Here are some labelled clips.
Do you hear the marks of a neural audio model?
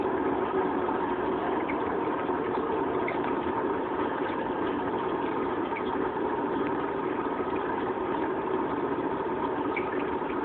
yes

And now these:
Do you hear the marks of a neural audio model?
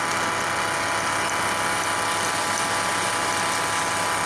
no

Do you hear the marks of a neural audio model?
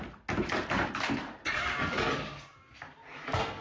no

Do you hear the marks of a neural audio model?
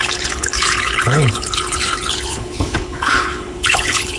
yes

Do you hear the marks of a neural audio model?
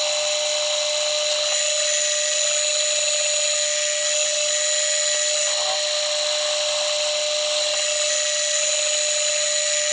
no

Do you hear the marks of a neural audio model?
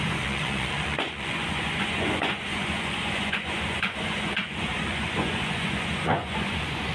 yes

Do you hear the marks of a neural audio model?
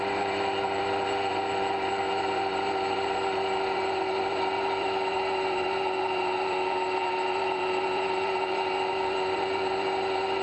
yes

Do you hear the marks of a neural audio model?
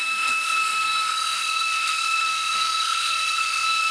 yes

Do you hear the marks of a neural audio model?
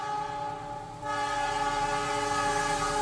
no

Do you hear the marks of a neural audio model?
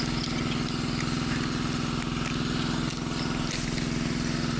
no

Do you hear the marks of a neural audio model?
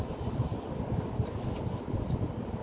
no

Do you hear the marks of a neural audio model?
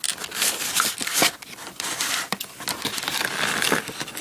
no